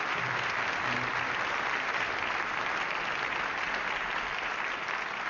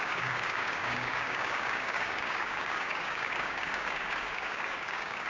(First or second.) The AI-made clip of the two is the second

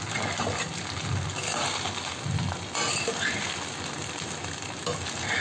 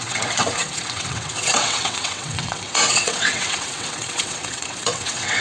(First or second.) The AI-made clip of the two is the second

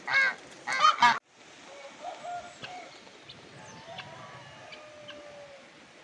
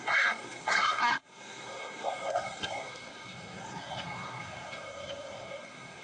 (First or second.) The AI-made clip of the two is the second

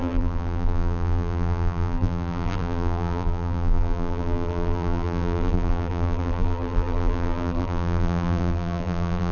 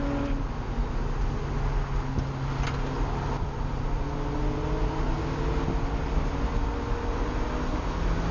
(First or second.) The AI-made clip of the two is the first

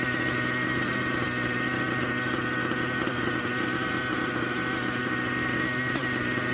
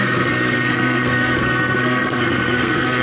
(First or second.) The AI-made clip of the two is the second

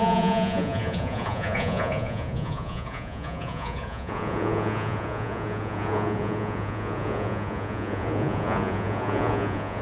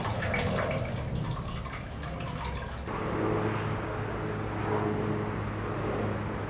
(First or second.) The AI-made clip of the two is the first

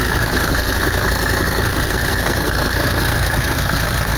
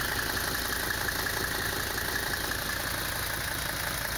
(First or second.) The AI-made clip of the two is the first